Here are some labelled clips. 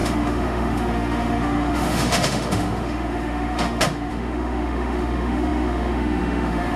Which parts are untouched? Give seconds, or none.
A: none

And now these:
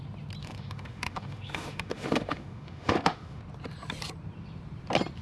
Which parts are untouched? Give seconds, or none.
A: 0.0-0.4; 3.4-5.2

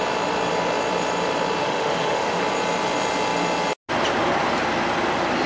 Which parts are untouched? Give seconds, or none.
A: 0.0-1.6; 2.4-5.5

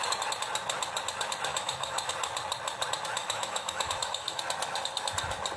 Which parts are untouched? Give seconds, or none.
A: 0.0-1.5; 2.1-3.2; 4.4-5.6

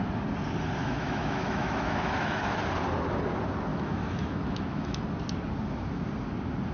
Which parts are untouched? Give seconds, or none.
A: 0.0-0.8; 2.6-3.7; 5.0-6.7

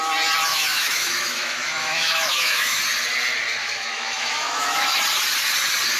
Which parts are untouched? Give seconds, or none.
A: 0.0-0.5; 2.8-3.6; 5.0-6.0

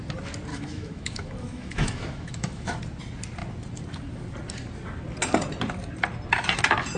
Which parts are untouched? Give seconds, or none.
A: 0.0-0.5; 2.8-7.0